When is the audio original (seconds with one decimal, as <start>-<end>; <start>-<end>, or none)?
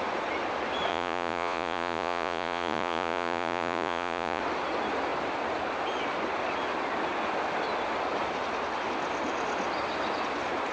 0.0-0.9; 4.4-10.7